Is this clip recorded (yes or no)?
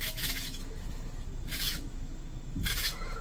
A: no